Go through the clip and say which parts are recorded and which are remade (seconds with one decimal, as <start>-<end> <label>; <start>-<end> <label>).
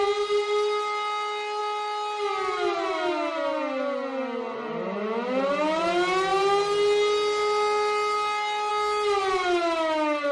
0.0-10.3 recorded